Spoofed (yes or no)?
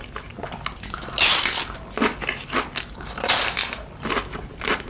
no